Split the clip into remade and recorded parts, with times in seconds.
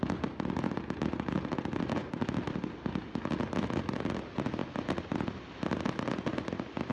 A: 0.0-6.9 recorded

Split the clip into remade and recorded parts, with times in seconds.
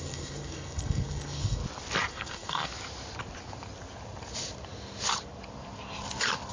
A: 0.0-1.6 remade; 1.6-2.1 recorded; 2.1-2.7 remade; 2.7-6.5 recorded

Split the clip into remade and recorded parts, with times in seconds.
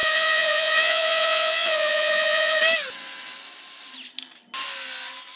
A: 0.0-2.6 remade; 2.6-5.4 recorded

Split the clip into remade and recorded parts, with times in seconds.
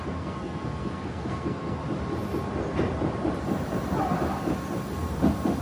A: 0.0-1.8 remade; 1.8-5.6 recorded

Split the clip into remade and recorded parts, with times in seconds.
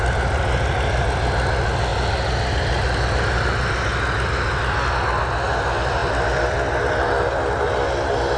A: 0.0-8.4 recorded